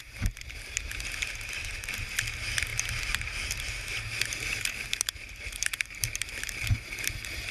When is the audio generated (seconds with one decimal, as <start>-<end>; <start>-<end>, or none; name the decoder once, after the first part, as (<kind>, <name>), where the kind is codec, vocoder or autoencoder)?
2.7-3.5 (vocoder, BigVGAN v2); 4.9-6.2